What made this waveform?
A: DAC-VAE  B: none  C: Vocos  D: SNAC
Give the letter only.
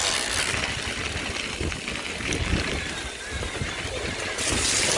B